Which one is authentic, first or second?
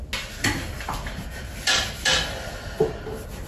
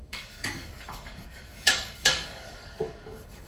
first